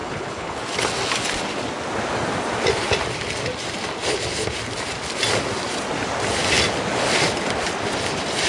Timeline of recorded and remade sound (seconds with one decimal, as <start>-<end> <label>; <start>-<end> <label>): 0.0-0.6 remade; 0.6-8.5 recorded